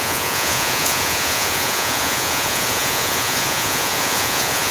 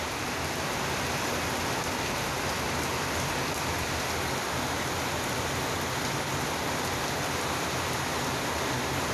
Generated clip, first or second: first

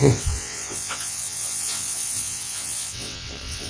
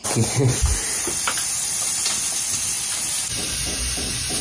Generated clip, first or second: first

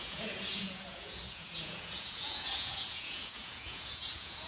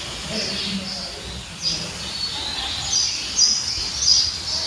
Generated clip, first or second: first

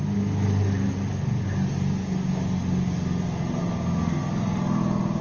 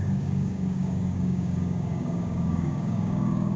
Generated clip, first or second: second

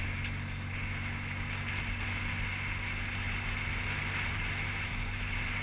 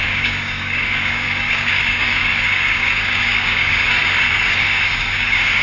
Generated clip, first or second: second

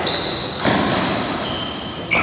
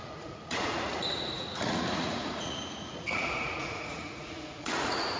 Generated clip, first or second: second